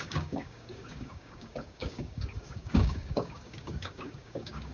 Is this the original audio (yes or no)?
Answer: no